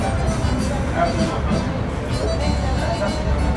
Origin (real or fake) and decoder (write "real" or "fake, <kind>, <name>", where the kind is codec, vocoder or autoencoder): real